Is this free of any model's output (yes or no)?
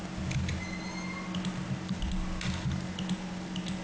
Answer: yes